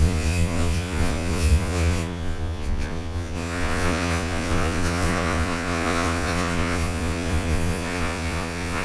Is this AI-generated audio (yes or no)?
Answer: yes